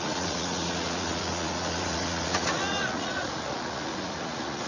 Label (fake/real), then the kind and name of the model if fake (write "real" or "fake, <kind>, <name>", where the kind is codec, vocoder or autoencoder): fake, vocoder, Vocos